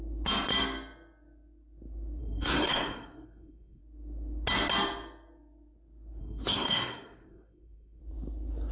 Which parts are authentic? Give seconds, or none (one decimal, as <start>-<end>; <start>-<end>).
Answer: 0.0-2.2; 3.8-6.2; 8.0-8.7